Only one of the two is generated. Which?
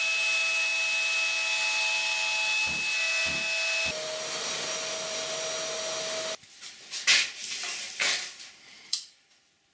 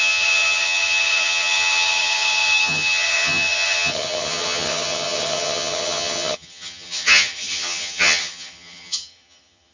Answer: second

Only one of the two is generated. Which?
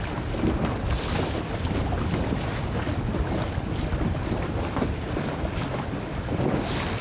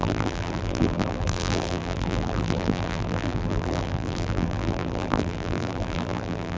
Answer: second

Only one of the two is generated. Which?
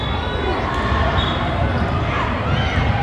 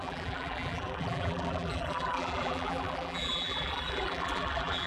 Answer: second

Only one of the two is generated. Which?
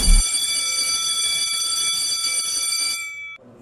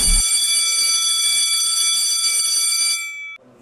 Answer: first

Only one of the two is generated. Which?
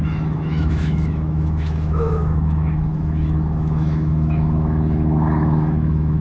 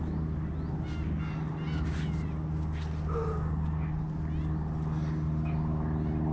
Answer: first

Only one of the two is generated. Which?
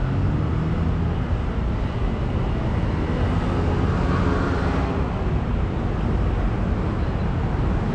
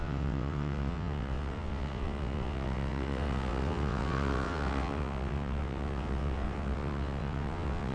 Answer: second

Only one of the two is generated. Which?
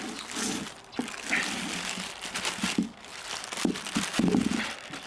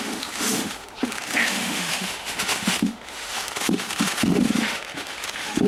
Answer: second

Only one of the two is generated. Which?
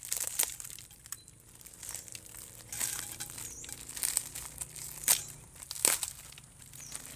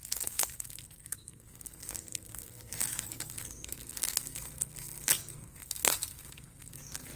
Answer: second